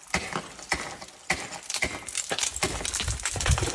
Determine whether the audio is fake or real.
real